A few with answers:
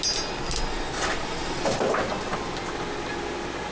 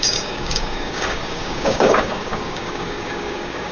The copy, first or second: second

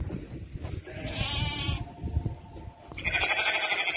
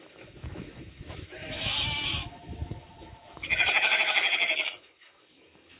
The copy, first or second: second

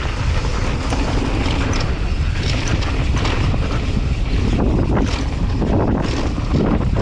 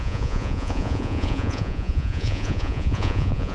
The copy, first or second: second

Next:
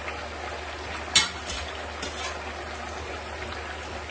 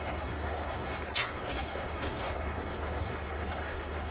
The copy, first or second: second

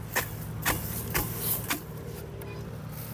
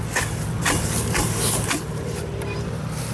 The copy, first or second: second